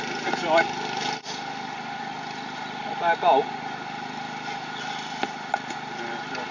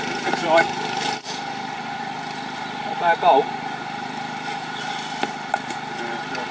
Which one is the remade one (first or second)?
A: second